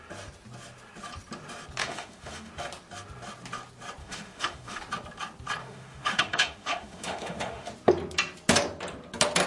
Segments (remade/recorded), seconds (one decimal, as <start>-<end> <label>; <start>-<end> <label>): 0.0-1.8 recorded; 1.8-2.5 remade; 2.5-4.0 recorded; 4.0-4.8 remade; 4.8-5.6 recorded; 5.6-7.7 remade; 7.7-9.5 recorded